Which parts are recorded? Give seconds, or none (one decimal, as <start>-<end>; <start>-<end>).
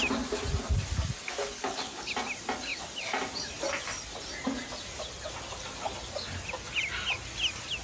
0.0-1.4; 2.1-7.8